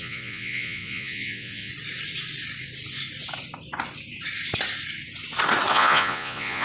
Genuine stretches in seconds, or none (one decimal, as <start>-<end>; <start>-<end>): 1.7-5.7